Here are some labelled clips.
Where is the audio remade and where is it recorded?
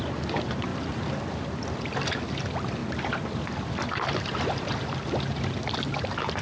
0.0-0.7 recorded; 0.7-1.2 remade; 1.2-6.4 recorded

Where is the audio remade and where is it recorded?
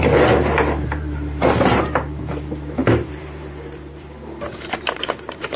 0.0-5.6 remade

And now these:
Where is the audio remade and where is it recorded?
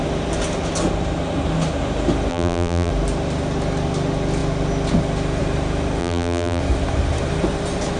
0.0-2.3 recorded; 2.3-2.9 remade; 2.9-6.0 recorded; 6.0-6.6 remade; 6.6-8.0 recorded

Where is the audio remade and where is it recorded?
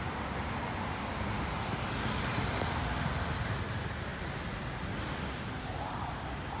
0.0-6.6 recorded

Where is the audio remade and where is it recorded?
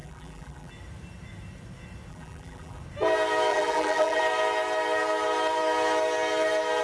0.0-0.7 remade; 0.7-2.1 recorded; 2.1-2.8 remade; 2.8-3.5 recorded; 3.5-4.2 remade; 4.2-6.8 recorded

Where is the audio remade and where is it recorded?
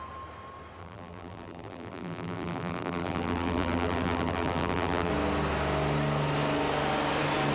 0.0-0.8 recorded; 0.8-5.1 remade; 5.1-7.5 recorded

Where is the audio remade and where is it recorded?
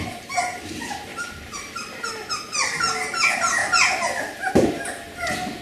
0.0-1.1 recorded; 1.1-2.3 remade; 2.3-3.6 recorded; 3.6-4.5 remade; 4.5-5.6 recorded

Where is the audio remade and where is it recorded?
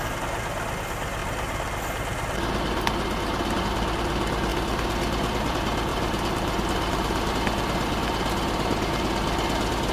0.0-5.9 recorded; 5.9-7.3 remade; 7.3-9.9 recorded